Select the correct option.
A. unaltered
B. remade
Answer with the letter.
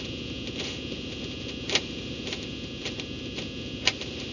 A